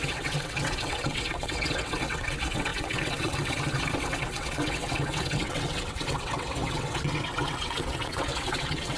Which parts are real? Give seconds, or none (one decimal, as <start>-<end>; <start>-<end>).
none